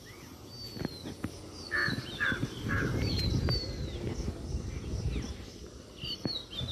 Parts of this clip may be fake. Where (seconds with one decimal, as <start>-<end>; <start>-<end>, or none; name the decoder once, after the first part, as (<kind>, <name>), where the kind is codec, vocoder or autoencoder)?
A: 1.8-3.5 (vocoder, BigVGAN v2)